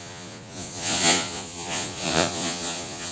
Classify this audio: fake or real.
fake